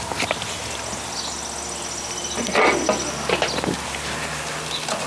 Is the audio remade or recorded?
recorded